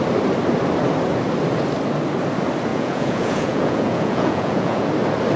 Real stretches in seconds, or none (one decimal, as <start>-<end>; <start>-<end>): 0.0-2.7; 4.9-5.4